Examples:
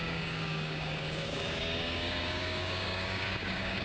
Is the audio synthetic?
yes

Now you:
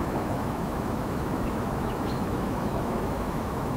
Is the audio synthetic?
yes